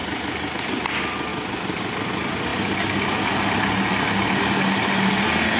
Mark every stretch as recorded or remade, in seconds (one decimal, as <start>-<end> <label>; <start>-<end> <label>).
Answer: 0.0-0.6 remade; 0.6-1.3 recorded; 1.3-2.1 remade; 2.1-5.6 recorded